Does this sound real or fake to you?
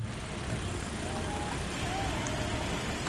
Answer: real